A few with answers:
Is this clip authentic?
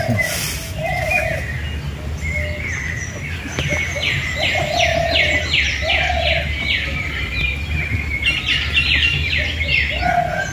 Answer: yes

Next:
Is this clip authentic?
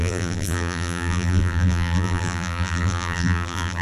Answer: no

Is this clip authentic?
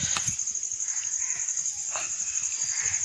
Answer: yes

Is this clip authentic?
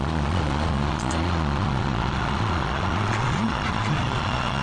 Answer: no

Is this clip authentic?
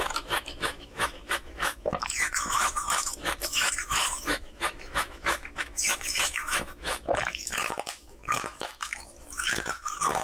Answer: no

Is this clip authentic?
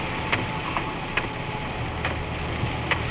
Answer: yes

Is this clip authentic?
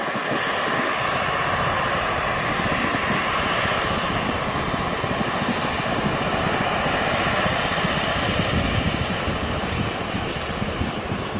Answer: yes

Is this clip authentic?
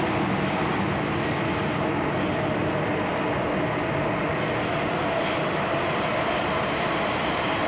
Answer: yes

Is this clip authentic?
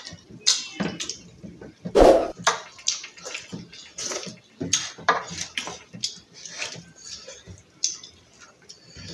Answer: yes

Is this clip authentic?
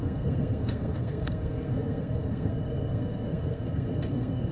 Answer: no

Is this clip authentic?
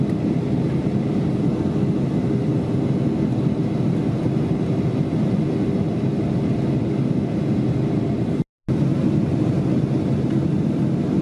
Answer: yes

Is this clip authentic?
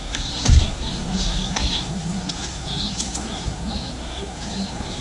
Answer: no